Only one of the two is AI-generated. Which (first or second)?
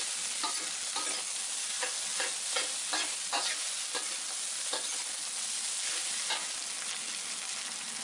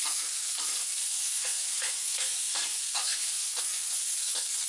second